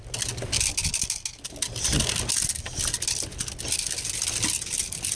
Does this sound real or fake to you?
real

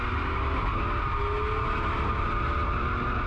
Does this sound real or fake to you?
real